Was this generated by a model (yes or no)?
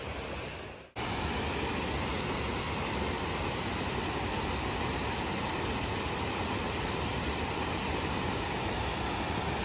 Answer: no